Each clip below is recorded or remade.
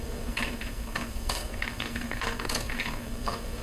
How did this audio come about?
remade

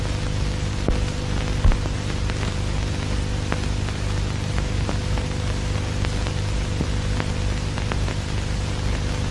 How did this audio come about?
recorded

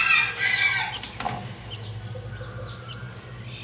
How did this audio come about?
recorded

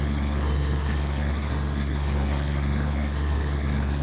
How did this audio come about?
remade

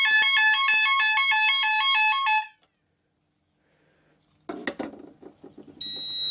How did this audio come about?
recorded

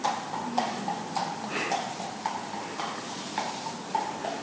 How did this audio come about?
recorded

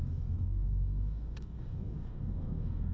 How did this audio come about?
remade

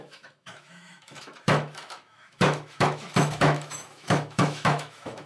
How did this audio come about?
remade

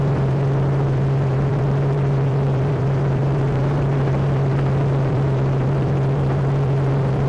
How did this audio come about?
remade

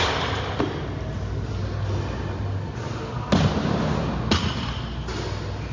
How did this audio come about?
recorded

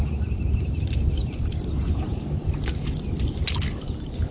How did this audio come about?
recorded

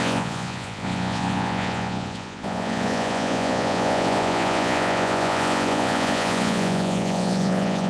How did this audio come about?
remade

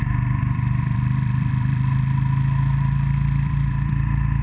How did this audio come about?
remade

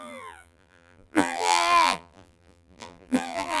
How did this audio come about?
remade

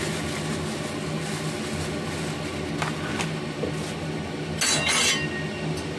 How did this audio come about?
recorded